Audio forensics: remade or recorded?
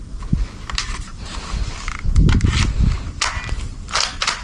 recorded